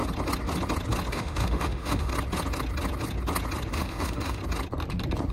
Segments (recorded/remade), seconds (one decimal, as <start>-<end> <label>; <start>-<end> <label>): 0.0-1.1 recorded; 1.1-2.1 remade; 2.1-3.7 recorded; 3.7-4.4 remade; 4.4-5.3 recorded

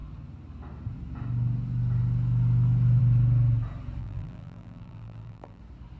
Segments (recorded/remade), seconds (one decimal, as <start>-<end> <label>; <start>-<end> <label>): 0.0-4.0 recorded; 4.0-5.6 remade; 5.6-6.0 recorded

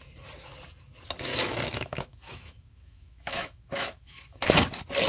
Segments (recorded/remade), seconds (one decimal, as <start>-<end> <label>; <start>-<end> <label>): 0.0-1.3 recorded; 1.3-4.4 remade; 4.4-5.1 recorded

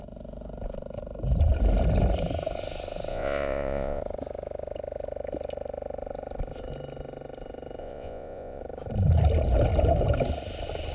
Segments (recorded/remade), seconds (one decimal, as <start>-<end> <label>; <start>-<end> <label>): 0.0-3.1 recorded; 3.1-4.0 remade; 4.0-7.8 recorded; 7.8-8.6 remade; 8.6-10.9 recorded

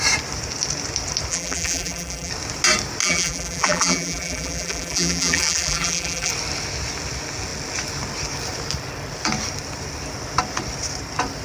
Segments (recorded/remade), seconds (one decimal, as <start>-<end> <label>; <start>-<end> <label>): 0.0-1.3 recorded; 1.3-2.3 remade; 2.3-3.0 recorded; 3.0-6.3 remade; 6.3-11.4 recorded

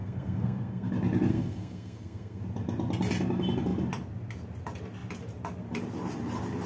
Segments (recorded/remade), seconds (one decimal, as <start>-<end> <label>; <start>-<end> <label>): 0.0-0.9 remade; 0.9-1.3 recorded; 1.3-2.4 remade; 2.4-6.7 recorded

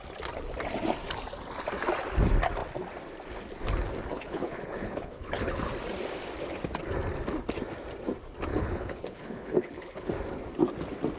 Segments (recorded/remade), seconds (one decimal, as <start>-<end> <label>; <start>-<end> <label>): 0.0-4.1 recorded; 4.1-5.7 remade; 5.7-8.5 recorded; 8.5-10.1 remade; 10.1-11.2 recorded

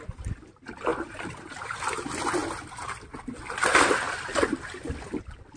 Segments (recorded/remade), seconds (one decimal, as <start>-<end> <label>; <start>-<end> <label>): 0.0-0.9 recorded; 0.9-2.0 remade; 2.0-5.6 recorded